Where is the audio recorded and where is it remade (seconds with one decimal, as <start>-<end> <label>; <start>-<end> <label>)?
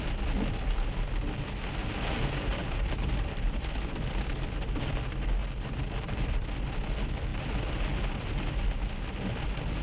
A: 0.0-2.6 recorded; 2.6-3.6 remade; 3.6-5.4 recorded; 5.4-6.4 remade; 6.4-9.8 recorded